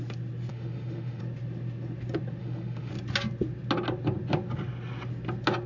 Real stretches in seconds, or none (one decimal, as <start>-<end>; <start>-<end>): 0.0-0.5; 1.2-2.4; 2.9-5.7